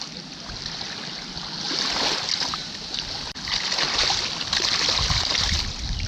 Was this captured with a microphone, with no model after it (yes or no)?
yes